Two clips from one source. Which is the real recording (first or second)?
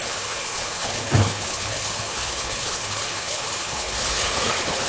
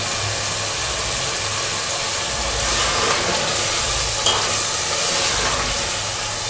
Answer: second